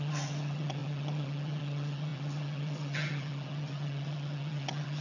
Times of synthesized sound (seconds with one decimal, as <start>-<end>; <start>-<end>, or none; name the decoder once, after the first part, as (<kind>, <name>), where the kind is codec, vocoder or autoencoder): 0.0-5.0 (vocoder, HiFi-GAN)